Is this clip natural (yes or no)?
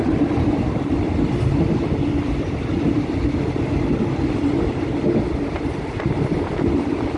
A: yes